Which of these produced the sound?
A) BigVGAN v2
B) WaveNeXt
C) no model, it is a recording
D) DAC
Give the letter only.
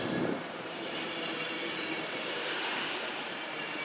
A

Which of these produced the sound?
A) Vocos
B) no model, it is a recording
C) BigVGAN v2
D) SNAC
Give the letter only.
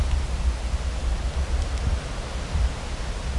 B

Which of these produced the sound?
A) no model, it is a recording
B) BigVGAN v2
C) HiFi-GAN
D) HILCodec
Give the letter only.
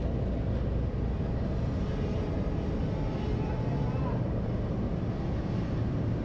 A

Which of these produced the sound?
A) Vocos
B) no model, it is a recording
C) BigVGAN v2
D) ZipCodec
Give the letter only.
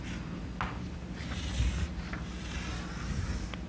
B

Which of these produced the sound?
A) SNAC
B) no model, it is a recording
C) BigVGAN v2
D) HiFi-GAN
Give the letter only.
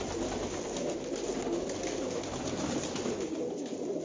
B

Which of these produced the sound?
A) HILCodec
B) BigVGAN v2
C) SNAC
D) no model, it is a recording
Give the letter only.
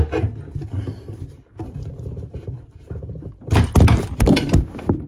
D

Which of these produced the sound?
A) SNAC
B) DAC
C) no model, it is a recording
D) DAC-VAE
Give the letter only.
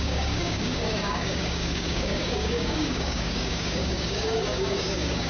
B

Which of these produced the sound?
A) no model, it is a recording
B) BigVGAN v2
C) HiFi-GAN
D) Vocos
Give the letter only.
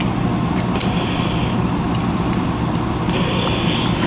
A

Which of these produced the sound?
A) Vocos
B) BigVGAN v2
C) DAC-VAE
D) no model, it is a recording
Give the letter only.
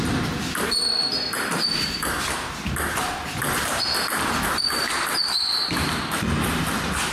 D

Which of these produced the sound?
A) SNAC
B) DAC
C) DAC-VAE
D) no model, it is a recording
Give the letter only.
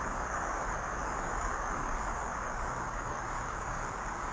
B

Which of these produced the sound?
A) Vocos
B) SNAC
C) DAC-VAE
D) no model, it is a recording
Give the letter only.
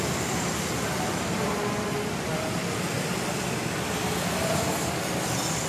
D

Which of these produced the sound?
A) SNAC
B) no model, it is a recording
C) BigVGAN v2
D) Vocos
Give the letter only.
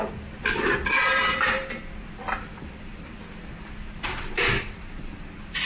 C